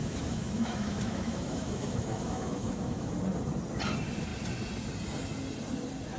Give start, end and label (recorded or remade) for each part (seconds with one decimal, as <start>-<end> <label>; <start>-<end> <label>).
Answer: 0.0-3.1 remade; 3.1-6.2 recorded